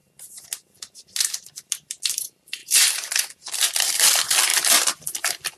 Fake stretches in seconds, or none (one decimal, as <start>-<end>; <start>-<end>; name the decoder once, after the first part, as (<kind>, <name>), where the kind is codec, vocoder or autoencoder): 2.1-5.6 (vocoder, BigVGAN v2)